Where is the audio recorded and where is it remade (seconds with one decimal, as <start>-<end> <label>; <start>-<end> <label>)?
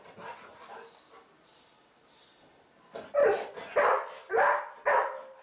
0.0-5.4 recorded